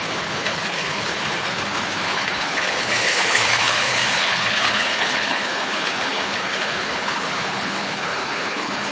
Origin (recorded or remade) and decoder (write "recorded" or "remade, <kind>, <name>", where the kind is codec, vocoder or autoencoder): remade, codec, HILCodec